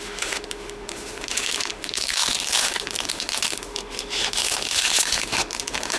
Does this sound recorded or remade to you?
remade